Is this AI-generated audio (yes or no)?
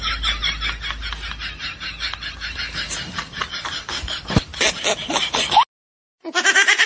no